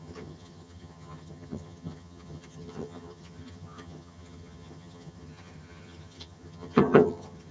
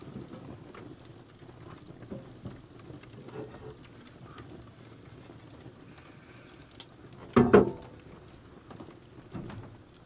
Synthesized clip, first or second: first